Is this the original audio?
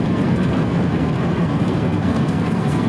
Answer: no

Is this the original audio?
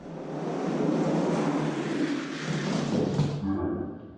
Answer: yes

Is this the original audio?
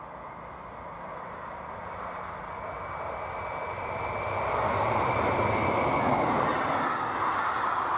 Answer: yes